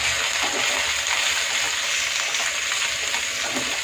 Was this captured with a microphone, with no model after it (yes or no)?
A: yes